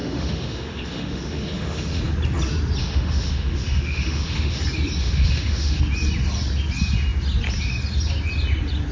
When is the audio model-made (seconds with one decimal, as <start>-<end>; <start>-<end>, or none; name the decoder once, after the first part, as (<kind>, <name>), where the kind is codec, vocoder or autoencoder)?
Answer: 0.0-2.0 (autoencoder, DAC-VAE); 2.8-4.6; 5.0-5.8